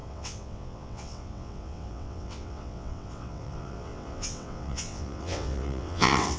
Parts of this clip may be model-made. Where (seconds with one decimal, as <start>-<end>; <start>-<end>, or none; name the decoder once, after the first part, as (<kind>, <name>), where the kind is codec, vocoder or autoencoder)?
0.0-6.4 (vocoder, WaveNeXt)